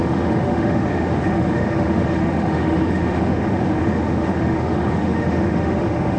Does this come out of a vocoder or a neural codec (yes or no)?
yes